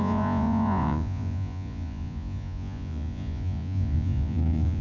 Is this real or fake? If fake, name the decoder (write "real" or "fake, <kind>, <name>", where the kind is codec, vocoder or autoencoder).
fake, vocoder, Vocos